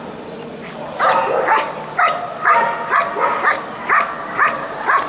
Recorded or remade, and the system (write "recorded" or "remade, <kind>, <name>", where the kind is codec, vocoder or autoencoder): recorded